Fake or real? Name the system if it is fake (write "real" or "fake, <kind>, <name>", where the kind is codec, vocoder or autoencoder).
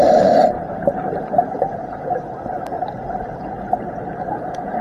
fake, vocoder, BigVGAN v2